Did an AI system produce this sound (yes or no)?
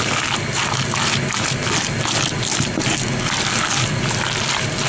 no